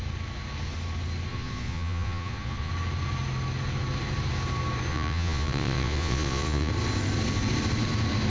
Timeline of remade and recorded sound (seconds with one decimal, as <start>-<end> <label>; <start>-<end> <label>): 0.0-1.3 recorded; 1.3-2.7 remade; 2.7-4.9 recorded; 4.9-6.7 remade; 6.7-8.3 recorded